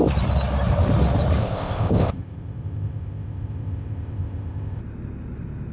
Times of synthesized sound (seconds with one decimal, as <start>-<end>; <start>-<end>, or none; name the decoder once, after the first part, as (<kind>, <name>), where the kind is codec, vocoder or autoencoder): 1.4-4.8 (codec, ZipCodec)